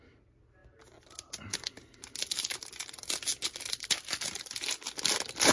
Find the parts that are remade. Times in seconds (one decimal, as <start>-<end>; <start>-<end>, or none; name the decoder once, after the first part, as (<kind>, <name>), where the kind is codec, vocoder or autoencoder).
none